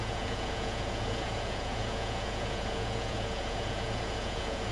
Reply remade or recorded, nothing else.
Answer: remade